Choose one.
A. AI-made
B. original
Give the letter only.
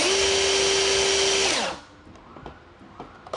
B